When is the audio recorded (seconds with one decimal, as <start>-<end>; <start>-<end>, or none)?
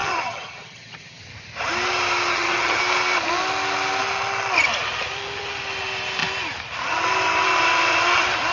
1.2-2.3; 2.8-8.5